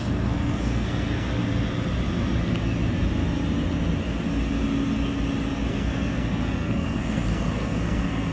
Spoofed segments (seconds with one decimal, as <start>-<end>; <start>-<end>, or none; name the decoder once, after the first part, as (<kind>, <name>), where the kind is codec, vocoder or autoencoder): 0.0-1.4 (codec, SNAC); 5.7-8.3